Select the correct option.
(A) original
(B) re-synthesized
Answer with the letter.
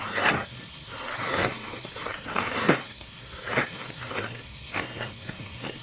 B